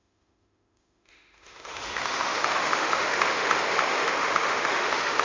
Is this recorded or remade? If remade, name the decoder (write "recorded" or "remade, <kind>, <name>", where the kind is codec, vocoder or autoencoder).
remade, autoencoder, DAC-VAE